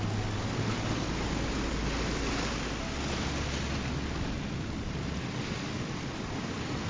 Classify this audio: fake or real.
real